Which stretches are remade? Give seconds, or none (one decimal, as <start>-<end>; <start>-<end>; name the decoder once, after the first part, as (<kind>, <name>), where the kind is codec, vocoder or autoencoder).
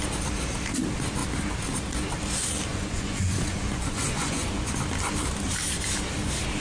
2.7-4.7 (vocoder, Vocos)